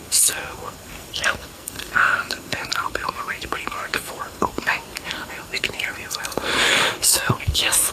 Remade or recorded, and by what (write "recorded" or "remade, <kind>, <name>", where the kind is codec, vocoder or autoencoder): remade, codec, SNAC